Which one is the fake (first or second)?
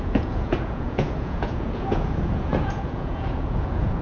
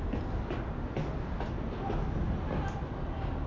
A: first